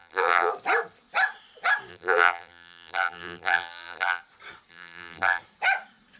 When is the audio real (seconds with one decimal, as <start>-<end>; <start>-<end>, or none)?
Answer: 0.5-1.9; 4.2-4.7; 5.4-6.2